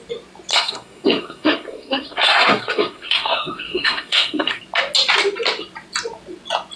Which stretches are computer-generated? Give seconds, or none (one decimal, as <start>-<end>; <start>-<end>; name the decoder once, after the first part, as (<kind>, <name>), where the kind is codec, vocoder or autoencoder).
0.5-4.6 (codec, SNAC)